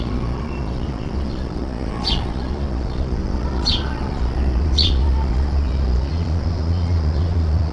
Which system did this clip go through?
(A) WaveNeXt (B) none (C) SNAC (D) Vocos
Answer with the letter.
D